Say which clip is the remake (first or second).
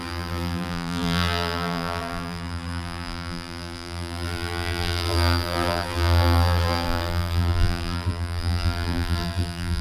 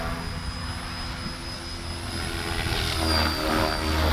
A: first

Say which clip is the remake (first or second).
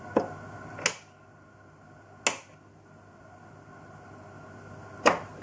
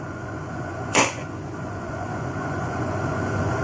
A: second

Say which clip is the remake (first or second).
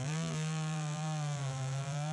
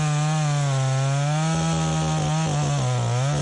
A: first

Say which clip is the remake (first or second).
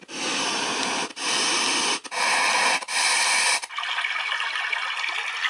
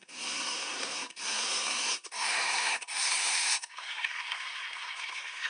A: second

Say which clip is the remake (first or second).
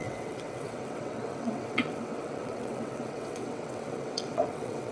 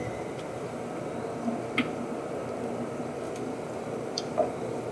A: first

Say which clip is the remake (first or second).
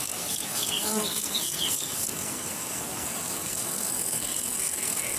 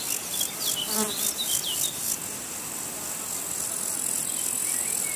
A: first